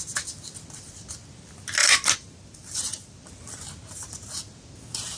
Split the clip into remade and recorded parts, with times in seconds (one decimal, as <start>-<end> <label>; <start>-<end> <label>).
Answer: 0.0-1.8 recorded; 1.8-3.5 remade; 3.5-5.2 recorded